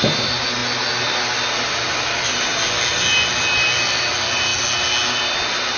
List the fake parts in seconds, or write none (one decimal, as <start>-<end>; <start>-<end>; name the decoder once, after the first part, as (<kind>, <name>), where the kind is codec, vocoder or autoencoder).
none